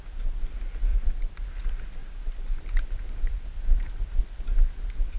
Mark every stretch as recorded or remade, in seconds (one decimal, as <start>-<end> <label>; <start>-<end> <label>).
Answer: 0.0-0.9 recorded; 0.9-1.4 remade; 1.4-2.0 recorded; 2.0-4.2 remade; 4.2-5.2 recorded